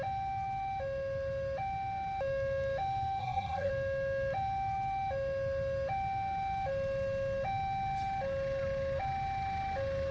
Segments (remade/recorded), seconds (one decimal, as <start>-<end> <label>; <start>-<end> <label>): 0.0-3.2 recorded; 3.2-3.7 remade; 3.7-10.1 recorded